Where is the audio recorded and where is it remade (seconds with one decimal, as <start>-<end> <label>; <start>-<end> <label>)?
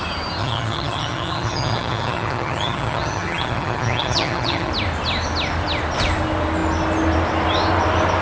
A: 0.0-0.4 recorded; 0.4-4.7 remade; 4.7-8.2 recorded